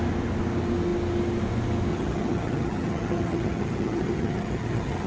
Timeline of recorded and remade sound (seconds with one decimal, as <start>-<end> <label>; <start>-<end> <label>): 0.0-1.9 recorded; 1.9-5.1 remade